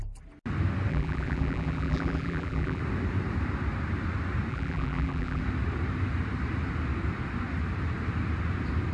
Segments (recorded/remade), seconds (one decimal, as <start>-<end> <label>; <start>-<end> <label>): 0.0-0.9 recorded; 0.9-2.8 remade; 2.8-4.5 recorded; 4.5-5.4 remade; 5.4-8.9 recorded